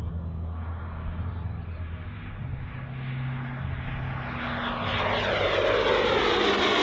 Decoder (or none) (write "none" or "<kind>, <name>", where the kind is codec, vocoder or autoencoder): none